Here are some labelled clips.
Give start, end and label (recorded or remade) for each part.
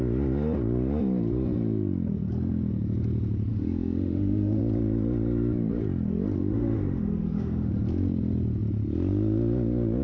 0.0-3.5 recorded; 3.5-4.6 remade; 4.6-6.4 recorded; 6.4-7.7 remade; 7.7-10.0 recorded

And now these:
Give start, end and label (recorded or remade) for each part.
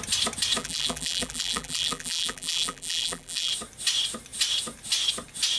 0.0-0.6 recorded; 0.6-3.5 remade; 3.5-5.6 recorded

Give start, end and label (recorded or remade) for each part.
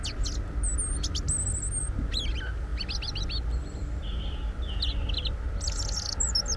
0.0-6.6 recorded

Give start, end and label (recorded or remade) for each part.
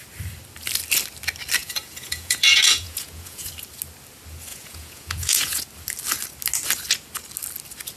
0.0-1.6 recorded; 1.6-3.5 remade; 3.5-4.5 recorded; 4.5-5.6 remade; 5.6-8.0 recorded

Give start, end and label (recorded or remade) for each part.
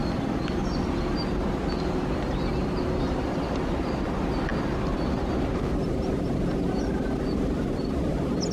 0.0-8.5 recorded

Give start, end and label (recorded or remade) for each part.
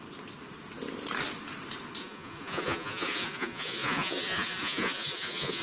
0.0-2.0 recorded; 2.0-5.6 remade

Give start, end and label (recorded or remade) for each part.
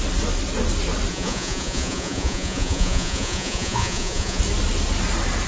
0.0-1.1 recorded; 1.1-4.4 remade; 4.4-5.5 recorded